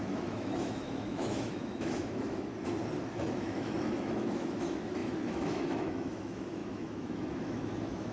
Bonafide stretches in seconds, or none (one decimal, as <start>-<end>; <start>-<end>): 2.5-3.1